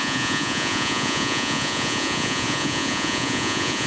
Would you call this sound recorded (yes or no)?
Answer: no